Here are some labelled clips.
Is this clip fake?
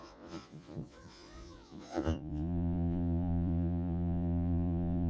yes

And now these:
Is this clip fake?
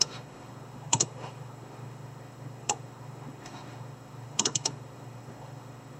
yes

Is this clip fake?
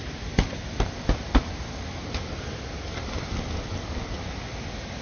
no